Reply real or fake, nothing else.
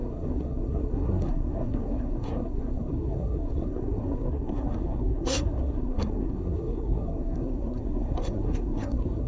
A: fake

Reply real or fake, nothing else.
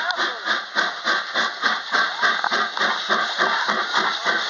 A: real